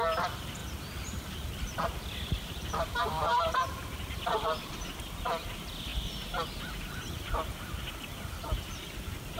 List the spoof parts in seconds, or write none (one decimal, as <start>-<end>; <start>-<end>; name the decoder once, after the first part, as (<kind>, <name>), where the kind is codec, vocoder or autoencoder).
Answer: 0.6-4.7 (vocoder, BigVGAN v2)